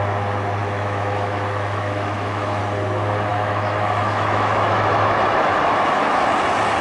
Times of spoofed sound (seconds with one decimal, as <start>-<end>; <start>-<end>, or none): 0.6-2.6; 3.3-6.2